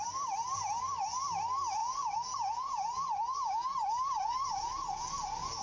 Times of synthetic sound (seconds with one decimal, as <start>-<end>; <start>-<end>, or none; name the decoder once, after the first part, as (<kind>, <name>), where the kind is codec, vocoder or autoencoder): 1.8-5.6 (vocoder, Vocos)